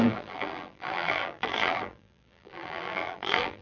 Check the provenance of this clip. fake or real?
fake